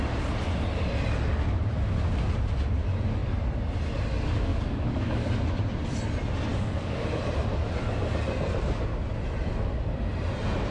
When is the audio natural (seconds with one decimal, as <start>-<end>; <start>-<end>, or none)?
0.0-4.5; 5.3-6.5; 7.2-10.7